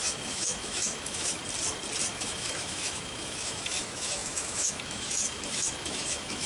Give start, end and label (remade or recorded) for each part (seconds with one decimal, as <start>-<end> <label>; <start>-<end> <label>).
0.0-1.4 remade; 1.4-2.1 recorded; 2.1-6.5 remade